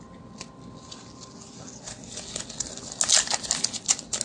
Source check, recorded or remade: recorded